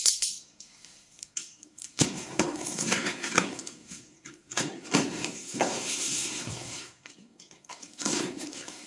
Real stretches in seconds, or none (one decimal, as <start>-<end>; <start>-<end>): none